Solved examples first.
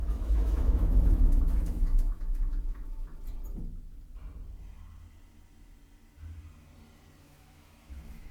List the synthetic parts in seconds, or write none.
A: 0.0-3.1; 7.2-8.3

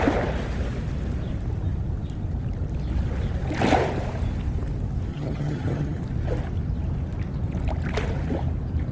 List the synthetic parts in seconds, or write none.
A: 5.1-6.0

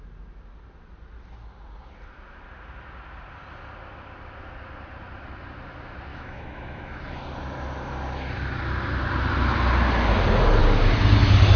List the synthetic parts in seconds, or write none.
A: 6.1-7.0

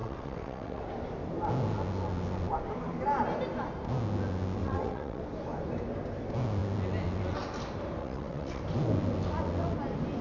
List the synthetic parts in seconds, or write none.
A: 0.0-0.8; 4.6-5.2; 8.0-8.6

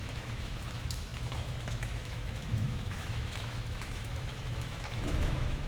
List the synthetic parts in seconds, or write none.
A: 0.0-5.7

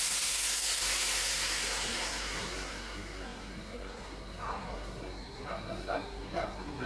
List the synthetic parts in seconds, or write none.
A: 0.0-6.9